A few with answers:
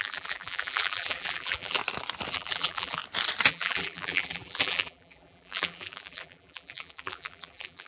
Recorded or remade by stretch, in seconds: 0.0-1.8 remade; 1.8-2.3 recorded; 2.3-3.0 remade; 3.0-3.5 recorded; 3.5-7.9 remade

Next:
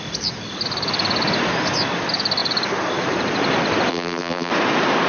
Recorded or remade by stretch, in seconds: 0.0-3.9 recorded; 3.9-4.5 remade; 4.5-5.1 recorded